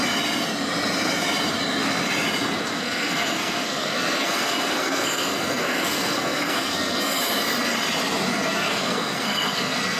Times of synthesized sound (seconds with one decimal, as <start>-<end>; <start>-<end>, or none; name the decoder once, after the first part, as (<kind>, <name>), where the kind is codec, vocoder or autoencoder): 2.6-7.2 (codec, SNAC); 8.3-10.0